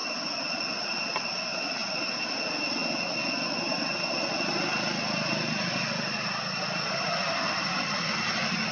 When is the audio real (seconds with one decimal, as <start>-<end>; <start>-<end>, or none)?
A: 0.0-8.7

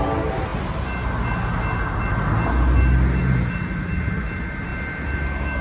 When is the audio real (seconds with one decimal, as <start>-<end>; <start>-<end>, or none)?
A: 0.0-5.6

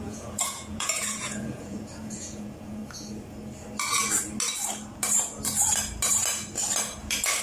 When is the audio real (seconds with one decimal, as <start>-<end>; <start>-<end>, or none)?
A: 2.8-7.4